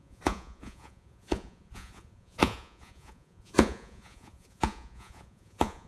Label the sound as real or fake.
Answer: fake